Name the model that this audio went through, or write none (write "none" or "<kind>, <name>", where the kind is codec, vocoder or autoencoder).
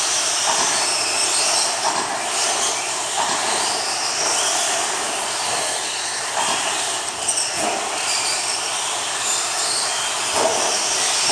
none